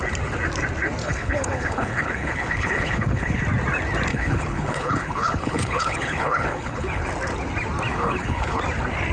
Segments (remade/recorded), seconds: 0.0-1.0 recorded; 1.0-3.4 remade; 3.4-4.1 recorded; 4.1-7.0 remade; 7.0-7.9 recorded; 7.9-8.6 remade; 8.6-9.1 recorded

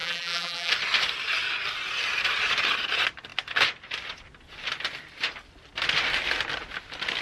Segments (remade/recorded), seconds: 0.0-0.7 remade; 0.7-7.2 recorded

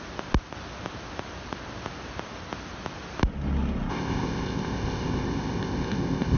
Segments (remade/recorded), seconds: 0.0-3.9 recorded; 3.9-6.4 remade

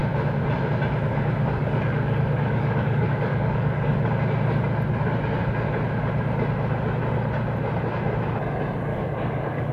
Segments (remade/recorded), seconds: 0.0-1.1 recorded; 1.1-4.1 remade; 4.1-8.9 recorded; 8.9-9.7 remade

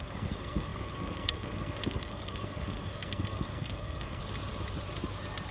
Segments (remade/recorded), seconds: 0.0-4.2 remade; 4.2-5.5 recorded

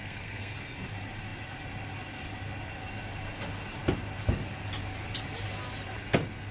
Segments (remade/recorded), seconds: 0.0-0.5 remade; 0.5-6.5 recorded